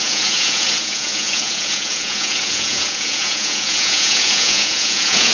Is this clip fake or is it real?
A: fake